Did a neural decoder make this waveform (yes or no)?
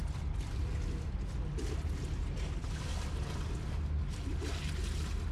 no